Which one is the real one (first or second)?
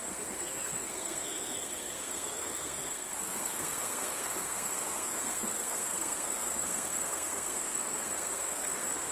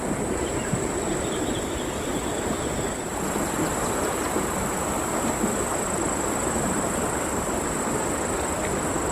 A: second